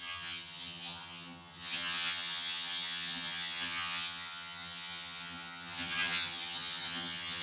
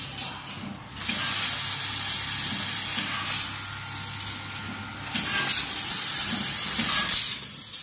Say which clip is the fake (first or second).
first